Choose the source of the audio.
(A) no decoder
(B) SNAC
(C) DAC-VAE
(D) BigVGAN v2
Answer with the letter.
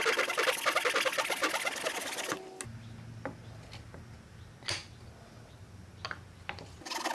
A